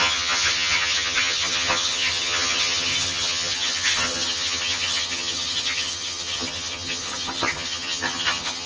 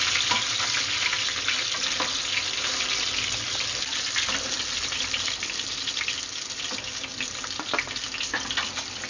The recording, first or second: second